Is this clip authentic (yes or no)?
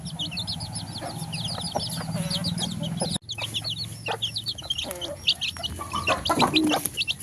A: yes